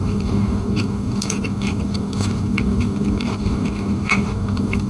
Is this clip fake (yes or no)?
yes